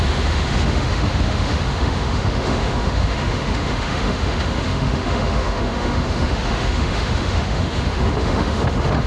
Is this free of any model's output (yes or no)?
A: no